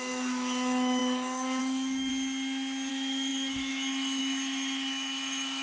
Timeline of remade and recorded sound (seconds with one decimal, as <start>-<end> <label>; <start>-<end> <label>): 0.0-2.1 remade; 2.1-2.9 recorded; 2.9-5.6 remade